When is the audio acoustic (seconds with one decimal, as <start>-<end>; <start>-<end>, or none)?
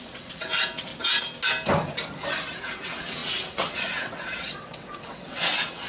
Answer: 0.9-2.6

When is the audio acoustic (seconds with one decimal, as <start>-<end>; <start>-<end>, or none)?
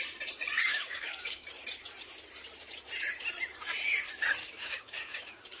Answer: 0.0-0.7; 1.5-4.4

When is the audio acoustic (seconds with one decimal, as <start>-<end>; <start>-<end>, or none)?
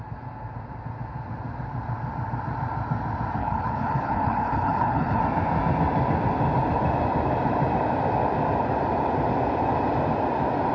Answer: 0.0-3.4; 5.2-10.7